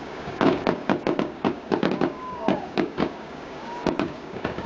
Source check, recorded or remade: remade